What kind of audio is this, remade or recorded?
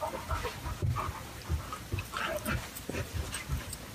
recorded